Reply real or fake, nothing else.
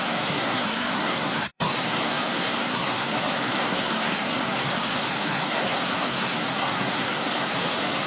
fake